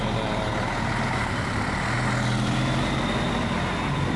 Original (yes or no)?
yes